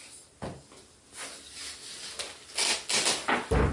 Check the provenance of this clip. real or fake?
real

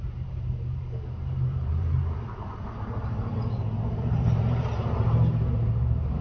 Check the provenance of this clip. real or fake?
fake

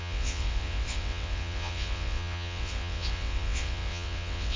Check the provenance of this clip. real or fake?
fake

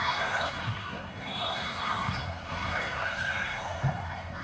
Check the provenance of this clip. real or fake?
fake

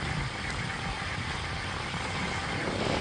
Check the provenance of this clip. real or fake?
real